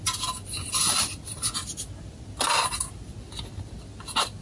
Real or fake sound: real